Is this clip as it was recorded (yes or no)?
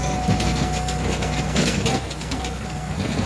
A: no